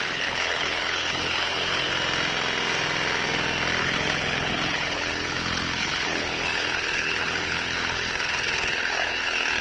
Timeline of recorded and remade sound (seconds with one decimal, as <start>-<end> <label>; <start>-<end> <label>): 0.0-1.9 remade; 1.9-3.8 recorded; 3.8-9.6 remade